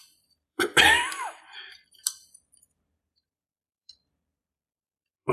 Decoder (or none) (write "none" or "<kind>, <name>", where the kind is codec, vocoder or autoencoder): vocoder, BigVGAN v2